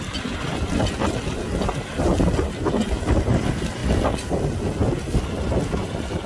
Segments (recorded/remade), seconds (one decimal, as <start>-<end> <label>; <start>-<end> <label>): 0.0-6.3 recorded